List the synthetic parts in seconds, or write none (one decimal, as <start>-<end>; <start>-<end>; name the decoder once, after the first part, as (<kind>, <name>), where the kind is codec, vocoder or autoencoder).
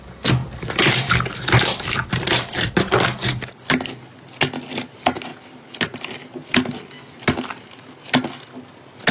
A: 0.4-3.7 (vocoder, BigVGAN v2)